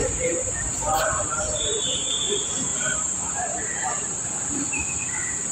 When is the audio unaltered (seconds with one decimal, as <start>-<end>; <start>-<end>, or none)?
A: 1.6-2.7

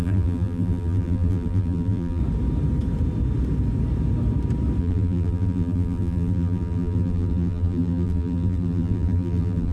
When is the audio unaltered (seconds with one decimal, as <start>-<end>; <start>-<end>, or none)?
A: 2.2-4.8

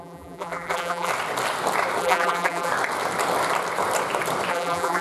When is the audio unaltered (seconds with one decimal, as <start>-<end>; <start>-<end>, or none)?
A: 1.1-2.0; 2.7-4.5

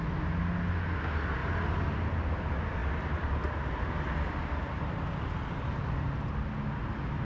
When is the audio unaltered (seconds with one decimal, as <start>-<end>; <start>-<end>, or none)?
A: 0.0-7.2

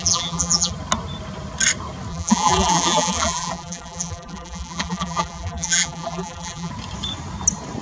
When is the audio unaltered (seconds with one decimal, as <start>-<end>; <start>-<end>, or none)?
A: 0.7-2.1; 6.7-7.8

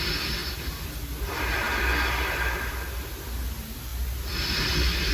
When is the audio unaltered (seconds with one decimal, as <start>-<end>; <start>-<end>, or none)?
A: 0.0-5.1

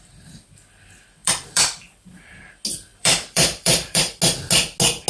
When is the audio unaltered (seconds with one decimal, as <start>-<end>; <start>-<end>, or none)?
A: 0.0-1.2; 2.4-2.9; 4.0-5.1

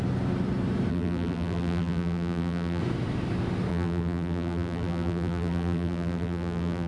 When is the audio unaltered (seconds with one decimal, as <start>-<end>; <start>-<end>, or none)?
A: 0.0-0.9; 2.8-3.7